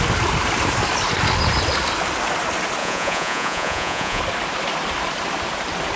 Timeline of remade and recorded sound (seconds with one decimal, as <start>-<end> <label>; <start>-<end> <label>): 0.0-2.8 recorded; 2.8-4.2 remade; 4.2-6.0 recorded